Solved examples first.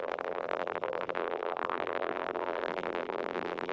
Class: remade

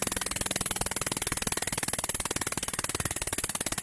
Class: recorded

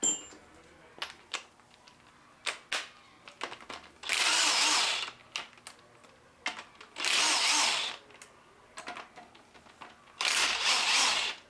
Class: recorded